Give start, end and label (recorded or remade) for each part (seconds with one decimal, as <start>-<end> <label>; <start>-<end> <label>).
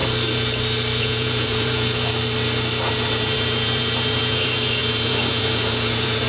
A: 0.0-1.0 recorded; 1.0-2.1 remade; 2.1-2.9 recorded; 2.9-6.3 remade